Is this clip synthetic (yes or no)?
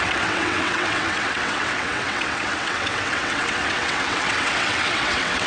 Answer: yes